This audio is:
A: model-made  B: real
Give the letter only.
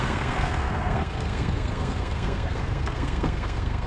A